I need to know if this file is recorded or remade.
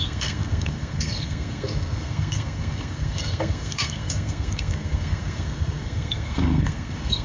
remade